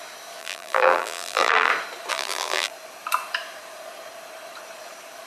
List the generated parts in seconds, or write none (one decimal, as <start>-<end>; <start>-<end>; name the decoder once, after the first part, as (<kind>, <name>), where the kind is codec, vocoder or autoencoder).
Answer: 0.4-1.7 (vocoder, BigVGAN v2); 2.1-2.7